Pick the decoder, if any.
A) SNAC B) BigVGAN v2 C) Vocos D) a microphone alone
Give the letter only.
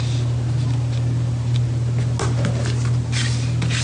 D